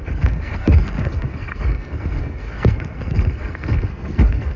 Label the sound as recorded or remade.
remade